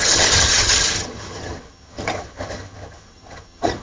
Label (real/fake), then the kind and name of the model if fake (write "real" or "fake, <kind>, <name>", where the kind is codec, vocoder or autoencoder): fake, vocoder, HiFi-GAN